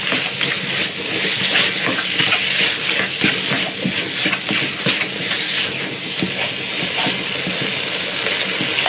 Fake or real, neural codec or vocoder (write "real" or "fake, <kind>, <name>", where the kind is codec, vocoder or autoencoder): real